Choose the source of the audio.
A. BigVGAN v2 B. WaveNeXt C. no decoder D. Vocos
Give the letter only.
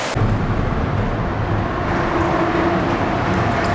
C